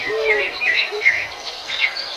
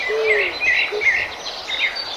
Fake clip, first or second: first